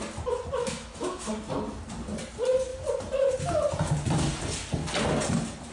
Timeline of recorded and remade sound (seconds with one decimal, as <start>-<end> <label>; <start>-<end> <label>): 0.0-0.6 recorded; 0.6-1.3 remade; 1.3-5.7 recorded